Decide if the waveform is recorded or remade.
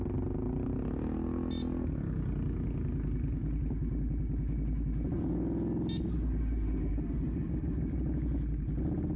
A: recorded